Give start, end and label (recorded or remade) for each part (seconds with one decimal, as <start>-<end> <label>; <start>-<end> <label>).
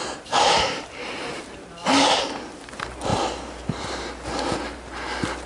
0.0-1.4 remade; 1.4-3.1 recorded; 3.1-4.0 remade; 4.0-5.5 recorded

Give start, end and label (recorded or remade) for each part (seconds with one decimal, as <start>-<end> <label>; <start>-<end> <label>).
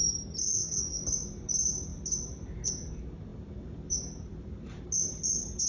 0.0-0.4 recorded; 0.4-1.0 remade; 1.0-5.7 recorded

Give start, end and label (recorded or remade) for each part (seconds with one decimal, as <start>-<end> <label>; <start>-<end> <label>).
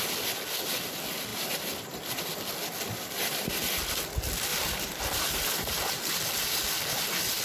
0.0-1.3 recorded; 1.3-2.2 remade; 2.2-4.5 recorded; 4.5-6.1 remade; 6.1-7.4 recorded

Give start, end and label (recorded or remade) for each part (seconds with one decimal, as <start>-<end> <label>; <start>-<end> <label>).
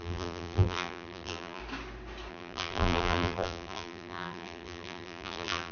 0.0-1.6 remade; 1.6-2.3 recorded; 2.3-5.7 remade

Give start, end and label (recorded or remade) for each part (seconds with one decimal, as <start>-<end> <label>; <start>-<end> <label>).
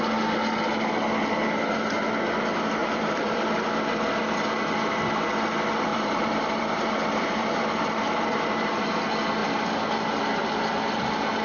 0.0-2.8 recorded; 2.8-3.4 remade; 3.4-5.9 recorded; 5.9-9.0 remade; 9.0-11.4 recorded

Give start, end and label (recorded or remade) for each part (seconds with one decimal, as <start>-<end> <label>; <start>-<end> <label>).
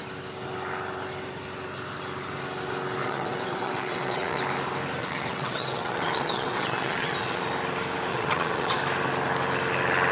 0.0-3.0 recorded; 3.0-4.4 remade; 4.4-5.0 recorded; 5.0-7.4 remade; 7.4-8.1 recorded; 8.1-8.8 remade; 8.8-10.1 recorded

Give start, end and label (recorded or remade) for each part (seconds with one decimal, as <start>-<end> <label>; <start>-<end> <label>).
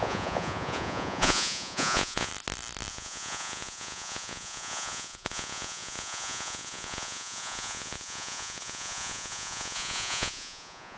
0.0-2.3 remade; 2.3-2.9 recorded; 2.9-11.0 remade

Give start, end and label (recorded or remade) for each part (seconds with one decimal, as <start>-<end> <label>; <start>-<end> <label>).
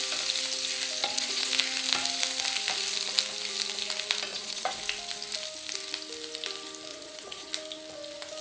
0.0-1.0 recorded; 1.0-1.5 remade; 1.5-4.3 recorded; 4.3-4.8 remade; 4.8-6.9 recorded; 6.9-7.5 remade; 7.5-8.4 recorded